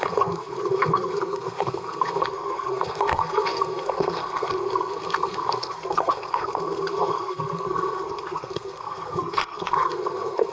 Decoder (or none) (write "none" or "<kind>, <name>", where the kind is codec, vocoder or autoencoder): codec, SNAC